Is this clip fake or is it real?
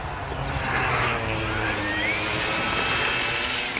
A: real